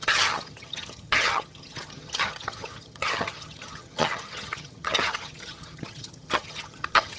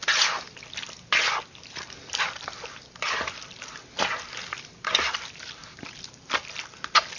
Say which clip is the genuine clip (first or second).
second